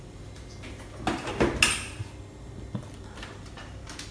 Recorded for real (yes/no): yes